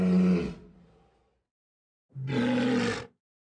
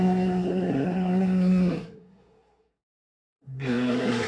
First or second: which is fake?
second